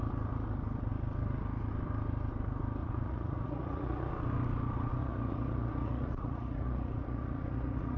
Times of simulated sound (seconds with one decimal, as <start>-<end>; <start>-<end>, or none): 2.8-4.1; 5.0-8.0